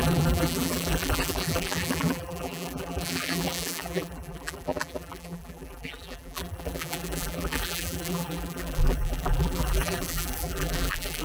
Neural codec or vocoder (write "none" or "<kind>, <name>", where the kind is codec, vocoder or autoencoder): vocoder, BigVGAN v2